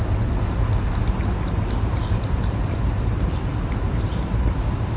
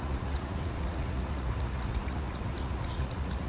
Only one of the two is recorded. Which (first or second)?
first